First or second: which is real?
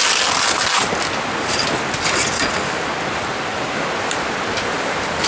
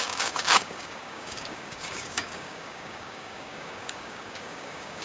first